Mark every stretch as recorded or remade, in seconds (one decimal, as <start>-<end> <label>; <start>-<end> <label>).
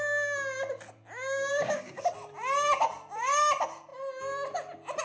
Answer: 0.0-1.5 recorded; 1.5-2.0 remade; 2.0-5.0 recorded